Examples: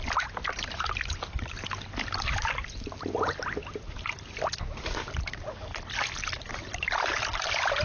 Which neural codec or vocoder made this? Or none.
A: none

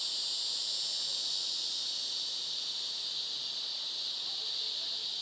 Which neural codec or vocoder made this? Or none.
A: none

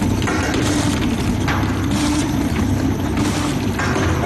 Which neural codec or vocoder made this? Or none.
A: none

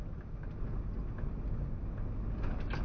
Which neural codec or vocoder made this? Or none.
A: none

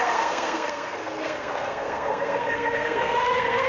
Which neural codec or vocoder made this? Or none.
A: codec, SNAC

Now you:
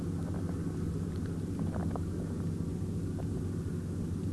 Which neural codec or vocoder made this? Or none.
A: none